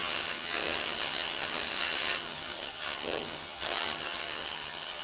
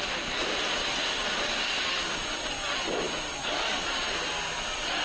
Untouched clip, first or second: second